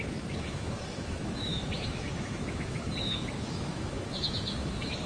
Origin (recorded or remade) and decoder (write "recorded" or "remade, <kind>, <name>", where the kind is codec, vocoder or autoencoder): remade, autoencoder, DAC-VAE